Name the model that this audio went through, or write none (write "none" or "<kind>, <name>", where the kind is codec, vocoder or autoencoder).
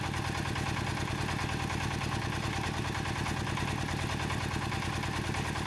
none